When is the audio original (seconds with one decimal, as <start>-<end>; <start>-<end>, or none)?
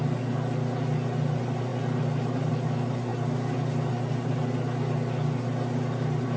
0.0-6.4